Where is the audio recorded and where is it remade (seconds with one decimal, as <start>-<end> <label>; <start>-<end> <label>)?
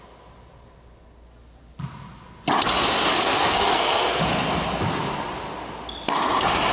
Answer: 0.0-3.1 recorded; 3.1-4.2 remade; 4.2-6.7 recorded